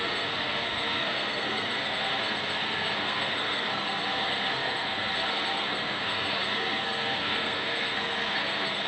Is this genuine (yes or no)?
no